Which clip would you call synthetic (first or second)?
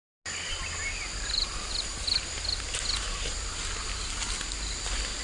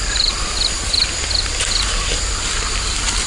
second